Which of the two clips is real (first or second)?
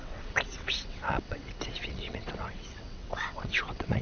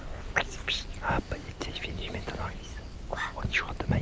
second